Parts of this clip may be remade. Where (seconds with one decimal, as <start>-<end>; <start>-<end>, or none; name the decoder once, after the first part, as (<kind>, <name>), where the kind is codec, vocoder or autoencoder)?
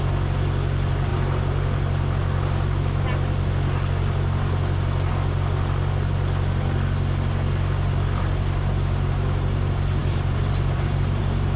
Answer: 10.0-11.2 (vocoder, BigVGAN v2)